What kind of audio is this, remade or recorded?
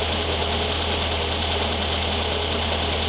recorded